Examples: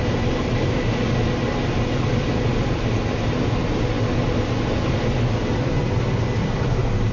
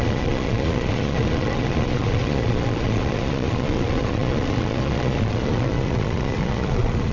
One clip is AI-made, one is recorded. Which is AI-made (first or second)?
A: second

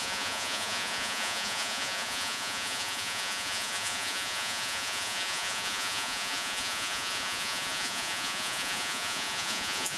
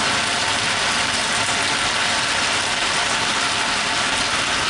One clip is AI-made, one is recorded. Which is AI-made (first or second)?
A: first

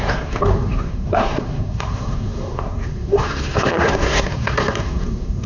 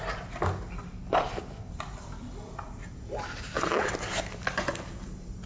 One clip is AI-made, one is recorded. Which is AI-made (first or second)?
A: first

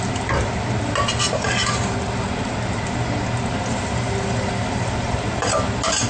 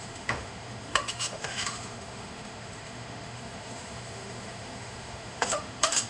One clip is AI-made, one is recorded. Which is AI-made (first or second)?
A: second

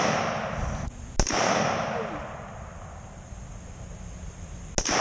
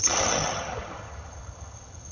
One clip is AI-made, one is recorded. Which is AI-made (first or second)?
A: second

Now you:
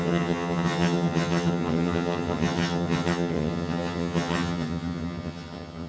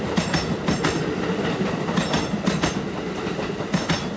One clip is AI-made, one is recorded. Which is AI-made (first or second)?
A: first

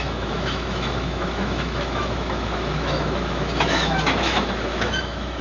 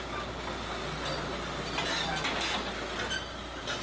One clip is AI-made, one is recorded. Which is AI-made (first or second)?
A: first